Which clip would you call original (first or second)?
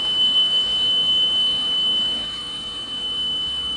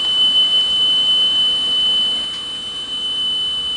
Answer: second